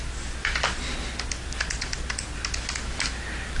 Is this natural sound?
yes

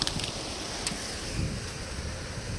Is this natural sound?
yes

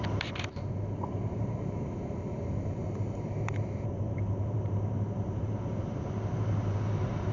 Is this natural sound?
no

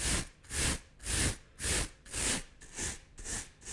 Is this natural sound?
yes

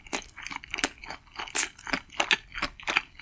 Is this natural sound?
yes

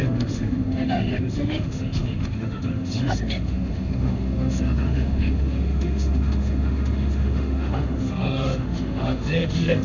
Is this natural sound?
no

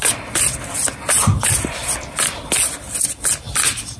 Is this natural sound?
yes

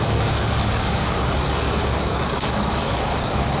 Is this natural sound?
no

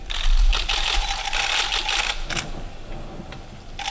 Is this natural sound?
yes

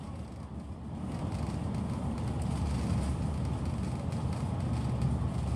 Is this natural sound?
yes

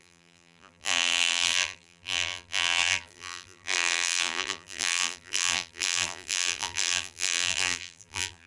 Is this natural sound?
no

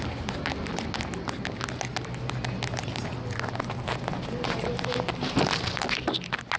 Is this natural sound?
yes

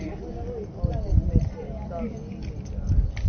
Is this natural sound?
yes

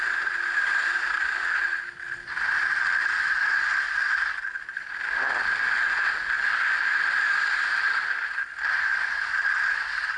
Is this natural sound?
yes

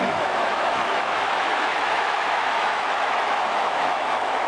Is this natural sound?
no